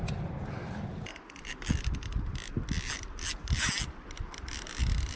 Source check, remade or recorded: recorded